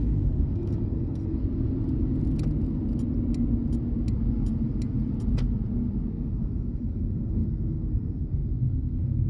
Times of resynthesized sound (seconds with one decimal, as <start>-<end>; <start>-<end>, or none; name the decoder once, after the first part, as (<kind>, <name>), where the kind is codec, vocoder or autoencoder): 0.0-1.4 (codec, SNAC); 6.1-9.3